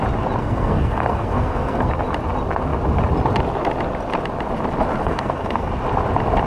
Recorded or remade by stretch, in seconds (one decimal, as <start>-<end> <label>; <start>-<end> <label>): 0.0-0.4 recorded; 0.4-1.9 remade; 1.9-5.0 recorded; 5.0-5.7 remade; 5.7-6.5 recorded